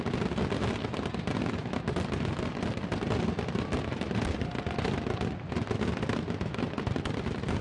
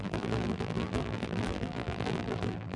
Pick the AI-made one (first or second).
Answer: second